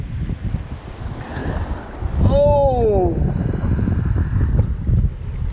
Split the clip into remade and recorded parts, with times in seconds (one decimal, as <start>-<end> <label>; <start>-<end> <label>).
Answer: 0.0-5.5 recorded